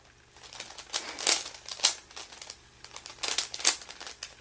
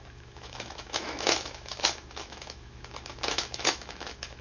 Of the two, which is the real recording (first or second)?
first